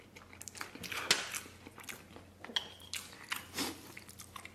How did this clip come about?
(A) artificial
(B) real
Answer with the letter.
B